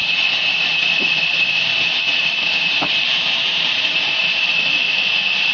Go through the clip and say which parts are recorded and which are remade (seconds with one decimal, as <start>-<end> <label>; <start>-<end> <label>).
0.0-2.1 recorded; 2.1-5.5 remade